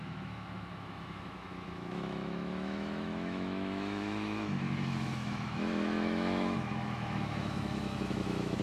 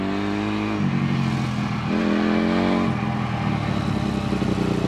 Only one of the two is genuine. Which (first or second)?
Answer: second